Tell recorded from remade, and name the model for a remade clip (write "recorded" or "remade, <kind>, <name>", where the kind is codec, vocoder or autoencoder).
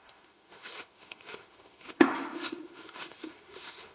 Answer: remade, autoencoder, DAC-VAE